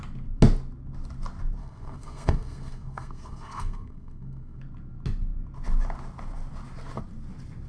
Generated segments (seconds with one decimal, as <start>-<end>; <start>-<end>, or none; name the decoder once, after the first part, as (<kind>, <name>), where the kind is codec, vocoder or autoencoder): 1.6-4.6 (codec, SNAC)

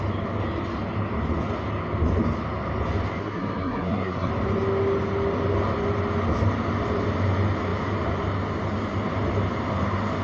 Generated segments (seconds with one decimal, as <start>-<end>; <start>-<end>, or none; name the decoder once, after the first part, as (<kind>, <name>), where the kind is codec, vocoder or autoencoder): 3.2-4.3 (codec, SNAC)

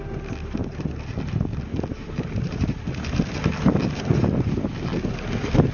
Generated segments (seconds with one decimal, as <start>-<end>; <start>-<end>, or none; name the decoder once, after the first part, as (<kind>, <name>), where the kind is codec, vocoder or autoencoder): 1.9-2.9 (vocoder, BigVGAN v2)

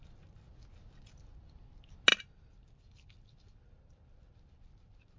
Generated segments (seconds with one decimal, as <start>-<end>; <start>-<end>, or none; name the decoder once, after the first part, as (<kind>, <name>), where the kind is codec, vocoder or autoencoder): none

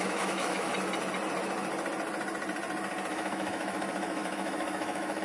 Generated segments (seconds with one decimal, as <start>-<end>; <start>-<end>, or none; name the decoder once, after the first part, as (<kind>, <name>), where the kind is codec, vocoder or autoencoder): 0.0-0.7 (autoencoder, DAC-VAE); 3.1-5.2

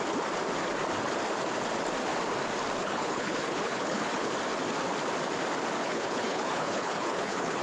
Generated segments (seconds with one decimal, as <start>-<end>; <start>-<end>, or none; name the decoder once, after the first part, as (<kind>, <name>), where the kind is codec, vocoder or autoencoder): 2.8-4.3 (codec, HILCodec); 5.8-7.6